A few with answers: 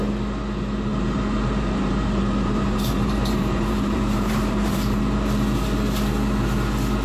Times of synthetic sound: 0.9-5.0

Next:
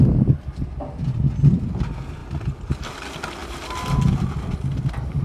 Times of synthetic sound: none